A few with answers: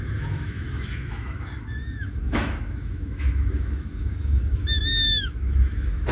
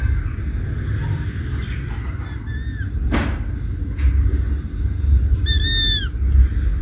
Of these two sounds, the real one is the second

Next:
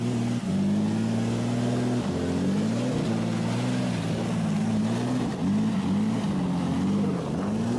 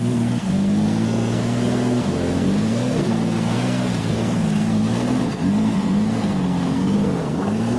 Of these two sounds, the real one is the first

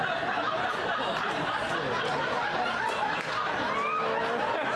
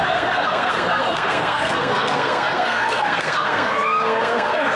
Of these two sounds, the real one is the first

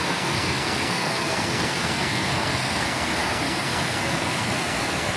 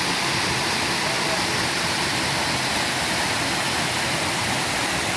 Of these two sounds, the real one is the second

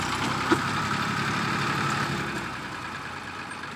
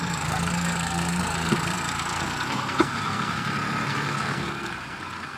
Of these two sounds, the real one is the first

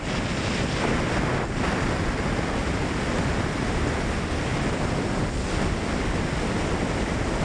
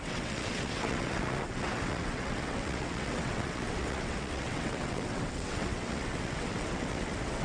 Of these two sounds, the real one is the first